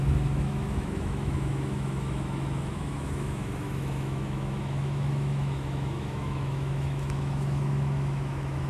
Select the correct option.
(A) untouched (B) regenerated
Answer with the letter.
B